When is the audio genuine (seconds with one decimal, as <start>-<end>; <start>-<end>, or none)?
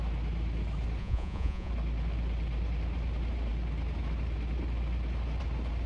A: 0.0-1.0; 1.7-5.9